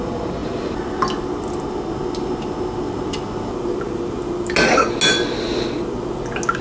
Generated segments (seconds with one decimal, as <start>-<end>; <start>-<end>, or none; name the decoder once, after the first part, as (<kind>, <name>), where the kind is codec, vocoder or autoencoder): none